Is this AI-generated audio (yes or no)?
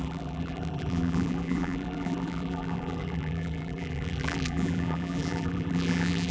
yes